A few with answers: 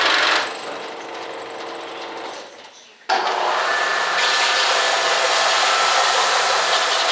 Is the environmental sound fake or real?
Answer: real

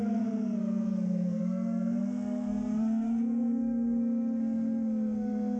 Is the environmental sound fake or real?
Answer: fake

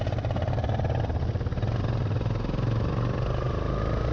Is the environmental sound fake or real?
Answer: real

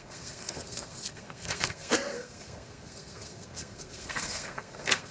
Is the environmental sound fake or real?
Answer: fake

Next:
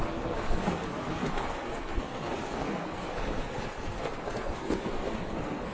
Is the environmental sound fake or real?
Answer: fake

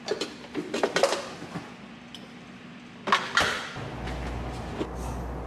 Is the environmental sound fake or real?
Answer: real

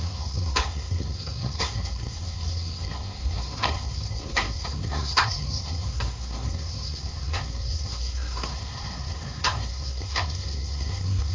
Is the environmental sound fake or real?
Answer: fake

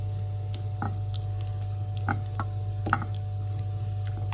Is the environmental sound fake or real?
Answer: real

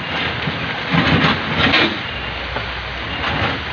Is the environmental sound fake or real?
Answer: real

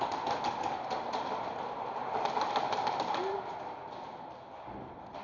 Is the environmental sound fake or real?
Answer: real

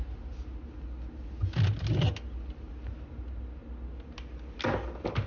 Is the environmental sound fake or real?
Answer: real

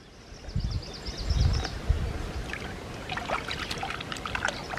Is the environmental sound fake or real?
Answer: real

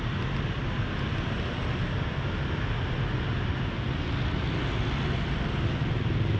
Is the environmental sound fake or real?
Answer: real